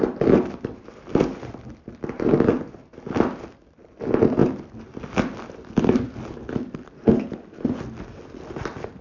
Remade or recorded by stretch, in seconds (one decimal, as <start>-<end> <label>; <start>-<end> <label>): 0.0-9.0 recorded